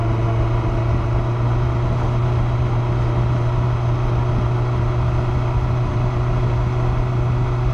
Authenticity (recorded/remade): recorded